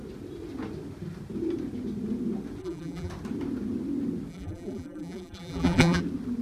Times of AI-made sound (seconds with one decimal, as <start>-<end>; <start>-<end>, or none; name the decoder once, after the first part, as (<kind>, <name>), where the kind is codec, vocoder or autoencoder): 2.6-3.1 (vocoder, BigVGAN v2); 4.3-6.0